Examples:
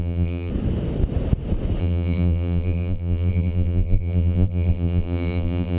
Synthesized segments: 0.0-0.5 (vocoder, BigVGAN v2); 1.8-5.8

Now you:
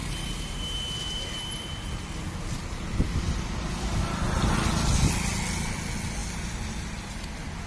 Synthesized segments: 0.0-3.2 (vocoder, BigVGAN v2)

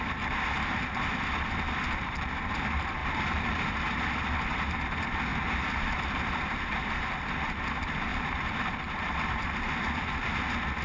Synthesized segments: 3.0-3.7 (vocoder, BigVGAN v2)

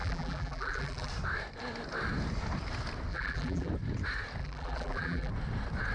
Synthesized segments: 0.0-1.1 (vocoder, BigVGAN v2); 3.1-3.7; 4.4-5.3

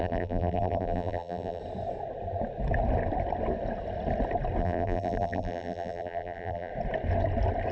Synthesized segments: 0.0-1.6 (vocoder, BigVGAN v2); 4.6-6.7

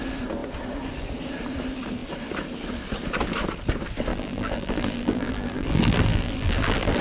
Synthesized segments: 4.1-7.0 (vocoder, BigVGAN v2)

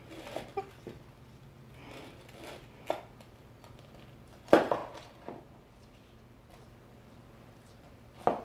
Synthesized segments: none